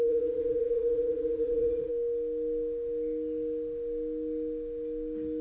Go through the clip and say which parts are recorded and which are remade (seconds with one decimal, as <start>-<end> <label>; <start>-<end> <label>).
0.0-1.9 remade; 1.9-5.4 recorded